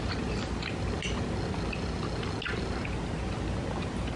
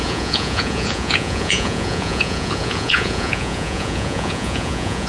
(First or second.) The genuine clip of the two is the first